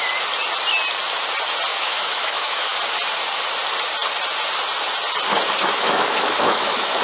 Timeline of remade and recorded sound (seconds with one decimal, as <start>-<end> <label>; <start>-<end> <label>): 0.0-1.7 recorded; 1.7-2.8 remade; 2.8-5.7 recorded; 5.7-7.0 remade